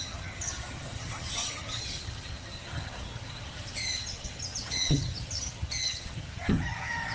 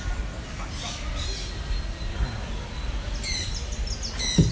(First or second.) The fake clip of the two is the first